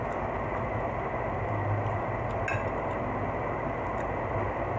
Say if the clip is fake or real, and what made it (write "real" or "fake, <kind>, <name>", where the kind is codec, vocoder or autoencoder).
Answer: real